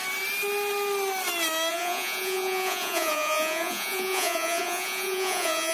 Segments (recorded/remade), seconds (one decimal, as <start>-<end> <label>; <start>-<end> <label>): 0.0-1.7 recorded; 1.7-5.7 remade